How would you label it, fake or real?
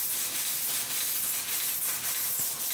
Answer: real